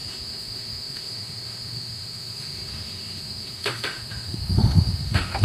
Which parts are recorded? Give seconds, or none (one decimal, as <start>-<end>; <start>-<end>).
none